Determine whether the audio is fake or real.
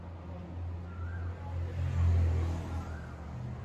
real